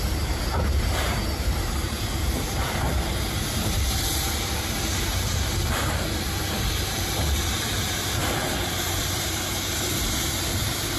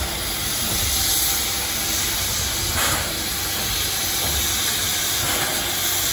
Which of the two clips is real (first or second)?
second